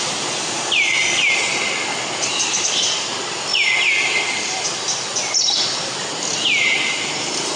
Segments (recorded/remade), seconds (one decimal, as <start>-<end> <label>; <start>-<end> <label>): 0.0-7.6 recorded